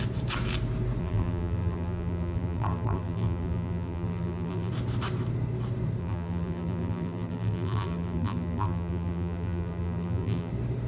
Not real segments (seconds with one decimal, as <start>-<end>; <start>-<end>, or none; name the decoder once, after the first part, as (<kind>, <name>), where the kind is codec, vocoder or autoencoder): 1.0-4.7 (vocoder, BigVGAN v2); 6.0-10.5